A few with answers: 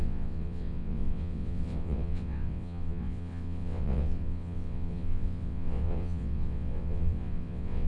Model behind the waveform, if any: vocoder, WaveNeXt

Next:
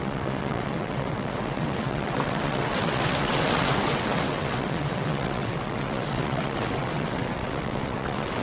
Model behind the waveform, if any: vocoder, WaveNeXt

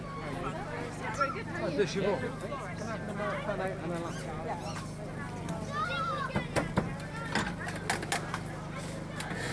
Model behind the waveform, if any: none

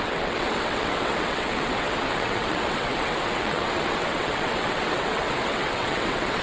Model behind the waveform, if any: vocoder, WaveNeXt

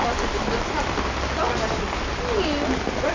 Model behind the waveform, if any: none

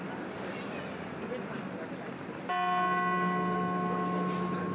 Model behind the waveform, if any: none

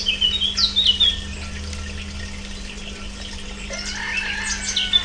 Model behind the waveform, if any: none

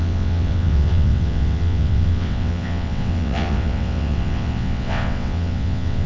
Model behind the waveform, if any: vocoder, WaveNeXt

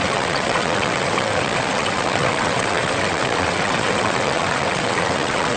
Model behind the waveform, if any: vocoder, WaveNeXt